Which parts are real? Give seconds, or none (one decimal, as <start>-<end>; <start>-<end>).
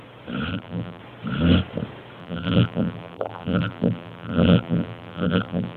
0.0-0.5; 1.0-2.2